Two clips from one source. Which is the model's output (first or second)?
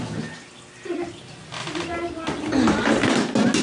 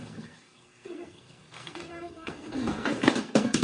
second